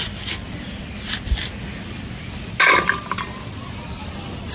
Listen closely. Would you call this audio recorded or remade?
recorded